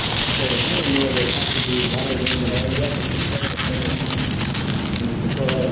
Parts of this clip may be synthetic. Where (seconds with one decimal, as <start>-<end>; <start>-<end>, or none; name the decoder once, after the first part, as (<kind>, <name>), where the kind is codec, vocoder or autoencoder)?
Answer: 1.3-2.1 (codec, DAC)